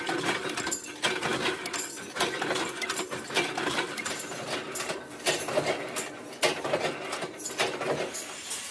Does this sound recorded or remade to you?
recorded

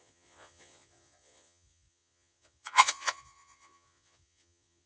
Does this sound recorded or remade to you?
remade